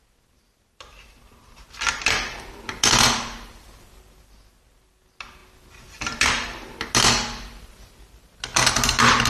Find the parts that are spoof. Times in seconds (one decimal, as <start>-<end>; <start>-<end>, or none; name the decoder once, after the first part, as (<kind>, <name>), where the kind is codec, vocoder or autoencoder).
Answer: none